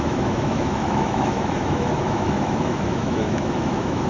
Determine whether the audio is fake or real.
fake